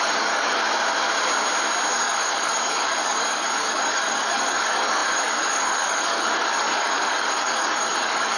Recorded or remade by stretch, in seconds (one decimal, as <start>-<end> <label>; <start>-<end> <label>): 0.0-0.6 remade; 0.6-1.9 recorded; 1.9-8.4 remade